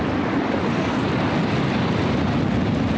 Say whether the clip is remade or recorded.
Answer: recorded